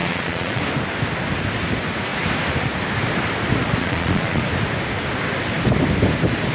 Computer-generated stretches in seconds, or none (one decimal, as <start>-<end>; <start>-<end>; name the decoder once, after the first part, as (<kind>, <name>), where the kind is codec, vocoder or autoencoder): 0.0-0.6 (vocoder, Vocos); 3.8-4.4